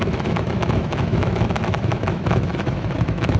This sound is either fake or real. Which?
fake